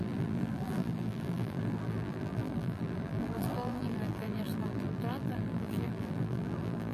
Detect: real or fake fake